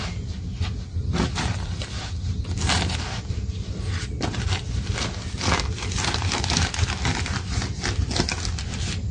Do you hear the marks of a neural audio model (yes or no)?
no